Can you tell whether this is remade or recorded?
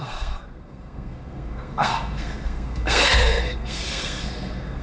remade